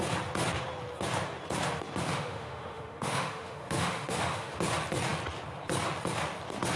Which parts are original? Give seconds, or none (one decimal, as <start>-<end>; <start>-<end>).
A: 0.0-2.1; 4.6-6.8